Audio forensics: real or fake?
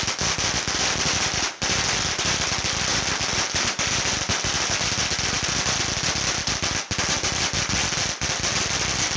real